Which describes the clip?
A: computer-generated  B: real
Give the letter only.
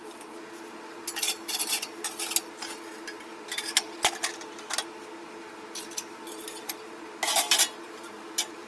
B